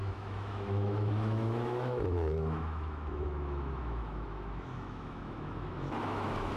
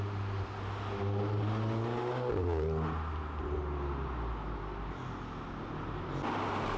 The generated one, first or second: first